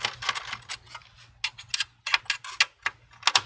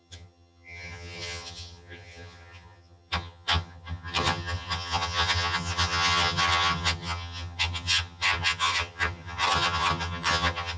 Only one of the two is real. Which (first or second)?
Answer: first